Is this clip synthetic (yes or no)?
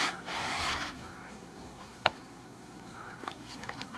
yes